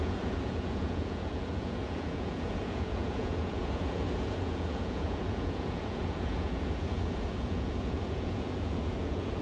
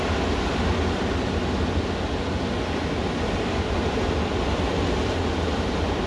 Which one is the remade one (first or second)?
first